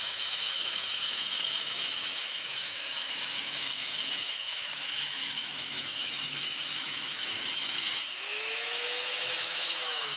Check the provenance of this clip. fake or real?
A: fake